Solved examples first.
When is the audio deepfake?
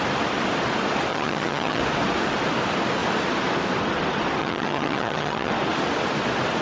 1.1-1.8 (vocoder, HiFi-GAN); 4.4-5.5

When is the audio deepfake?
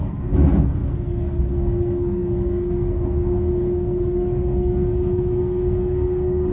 0.0-6.5 (codec, SNAC)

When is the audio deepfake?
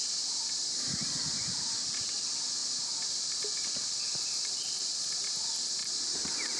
0.0-2.1 (vocoder, BigVGAN v2); 5.8-6.6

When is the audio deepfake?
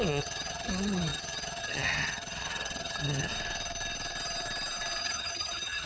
0.0-3.3 (vocoder, HiFi-GAN); 5.0-5.9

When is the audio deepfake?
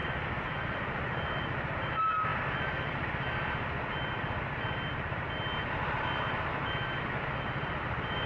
none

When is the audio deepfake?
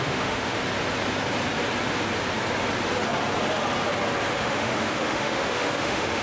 0.0-0.6 (autoencoder, DAC-VAE); 4.3-6.2